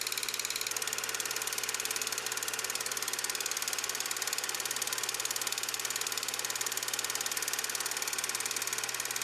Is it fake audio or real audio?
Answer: real